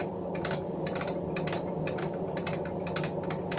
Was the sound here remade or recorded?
recorded